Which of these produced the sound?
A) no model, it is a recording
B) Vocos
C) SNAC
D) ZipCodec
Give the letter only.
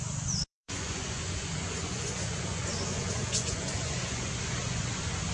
B